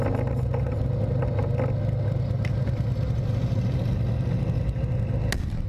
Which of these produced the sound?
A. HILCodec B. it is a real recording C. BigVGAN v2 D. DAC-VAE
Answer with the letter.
B